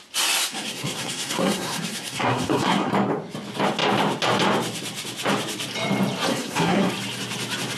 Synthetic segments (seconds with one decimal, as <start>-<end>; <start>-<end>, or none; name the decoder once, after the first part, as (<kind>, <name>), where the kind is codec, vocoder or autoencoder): 0.5-2.9 (codec, SNAC); 6.3-6.9